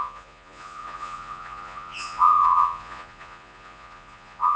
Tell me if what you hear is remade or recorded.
remade